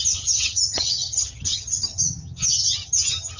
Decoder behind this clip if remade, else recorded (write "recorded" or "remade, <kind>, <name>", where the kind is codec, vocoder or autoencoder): remade, vocoder, HiFi-GAN